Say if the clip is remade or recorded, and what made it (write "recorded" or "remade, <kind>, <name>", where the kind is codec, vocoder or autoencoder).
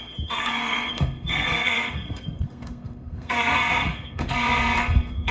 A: remade, codec, SNAC